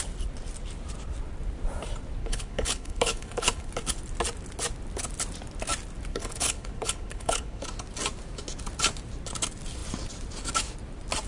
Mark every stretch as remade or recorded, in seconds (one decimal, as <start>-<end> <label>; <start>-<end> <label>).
0.0-2.2 recorded; 2.2-3.7 remade; 3.7-6.1 recorded; 6.1-7.6 remade; 7.6-11.3 recorded